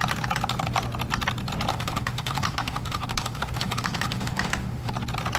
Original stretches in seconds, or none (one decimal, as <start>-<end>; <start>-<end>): 0.0-1.7; 4.9-5.4